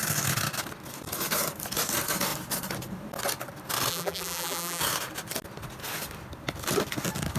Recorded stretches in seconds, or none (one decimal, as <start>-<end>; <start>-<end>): 0.0-3.9; 4.8-7.4